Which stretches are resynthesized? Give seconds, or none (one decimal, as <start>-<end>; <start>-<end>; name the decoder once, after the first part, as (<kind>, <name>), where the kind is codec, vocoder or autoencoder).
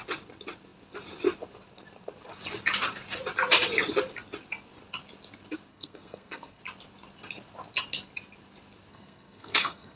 5.7-6.6 (codec, SNAC); 8.9-10.0